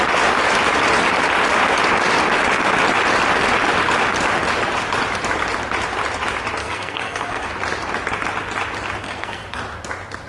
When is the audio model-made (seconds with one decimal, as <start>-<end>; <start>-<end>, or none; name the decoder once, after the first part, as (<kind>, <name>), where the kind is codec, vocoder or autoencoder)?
6.6-7.5 (codec, SNAC); 9.0-9.6